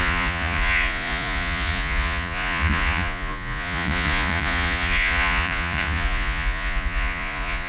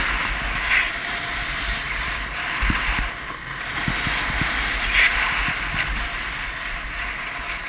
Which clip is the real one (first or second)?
second